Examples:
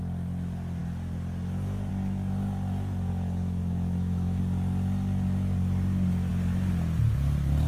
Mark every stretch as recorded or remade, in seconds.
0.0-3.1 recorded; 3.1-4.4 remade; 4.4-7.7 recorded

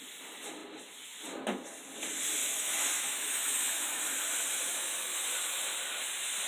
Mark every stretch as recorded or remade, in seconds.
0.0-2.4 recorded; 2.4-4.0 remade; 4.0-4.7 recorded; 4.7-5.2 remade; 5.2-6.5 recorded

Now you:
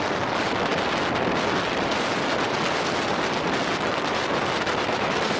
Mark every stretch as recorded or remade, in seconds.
0.0-5.4 recorded